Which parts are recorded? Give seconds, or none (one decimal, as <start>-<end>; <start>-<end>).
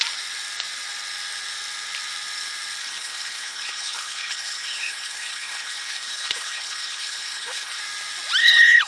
0.0-2.8; 7.8-8.4